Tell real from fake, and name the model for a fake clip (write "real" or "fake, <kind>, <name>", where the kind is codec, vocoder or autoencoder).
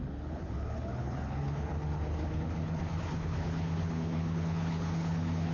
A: fake, codec, HILCodec